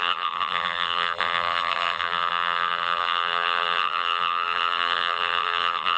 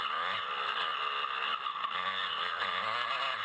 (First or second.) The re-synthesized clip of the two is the first